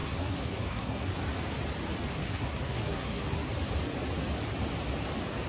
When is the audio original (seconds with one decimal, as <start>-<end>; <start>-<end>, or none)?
1.1-2.1; 3.5-5.5